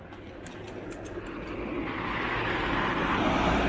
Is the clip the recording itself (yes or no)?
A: yes